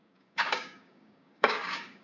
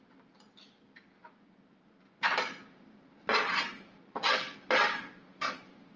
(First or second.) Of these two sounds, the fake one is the first